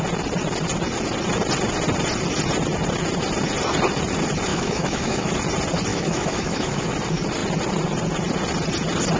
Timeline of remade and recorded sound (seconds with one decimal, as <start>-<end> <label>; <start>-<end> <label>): 0.0-4.5 recorded; 4.5-5.3 remade; 5.3-5.9 recorded; 5.9-6.9 remade; 6.9-9.2 recorded